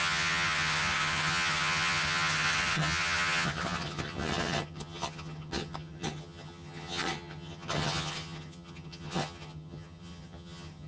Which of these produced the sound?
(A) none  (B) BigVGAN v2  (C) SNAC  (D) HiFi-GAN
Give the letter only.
D